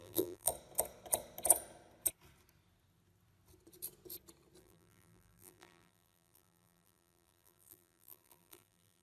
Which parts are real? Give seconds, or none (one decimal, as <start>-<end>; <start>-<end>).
0.5-4.6